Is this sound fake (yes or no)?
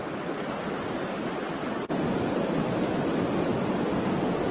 no